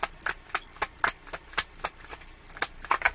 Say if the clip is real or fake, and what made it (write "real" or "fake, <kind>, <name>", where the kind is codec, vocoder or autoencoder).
real